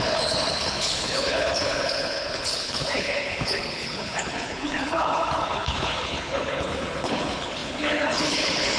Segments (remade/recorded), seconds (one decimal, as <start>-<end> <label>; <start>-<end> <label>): 0.0-8.8 remade